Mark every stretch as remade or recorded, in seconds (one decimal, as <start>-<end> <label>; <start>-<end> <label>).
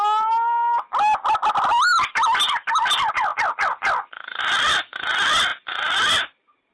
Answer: 0.0-6.7 recorded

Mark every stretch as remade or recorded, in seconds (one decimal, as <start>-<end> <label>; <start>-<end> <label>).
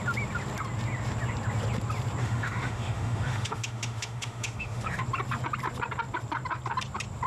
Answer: 0.0-2.2 recorded; 2.2-5.0 remade; 5.0-7.3 recorded